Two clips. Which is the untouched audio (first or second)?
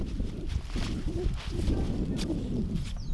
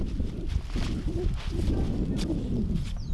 second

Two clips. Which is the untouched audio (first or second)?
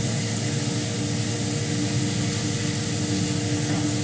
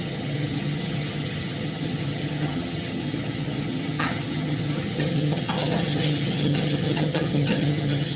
first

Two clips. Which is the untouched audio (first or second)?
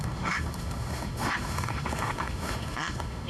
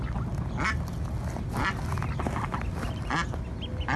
second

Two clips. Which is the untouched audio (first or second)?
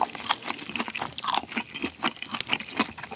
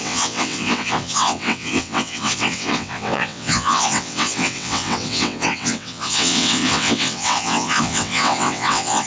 first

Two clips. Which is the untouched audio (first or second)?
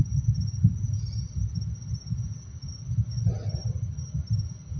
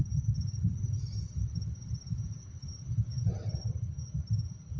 first